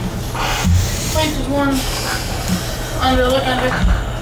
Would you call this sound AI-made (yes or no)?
no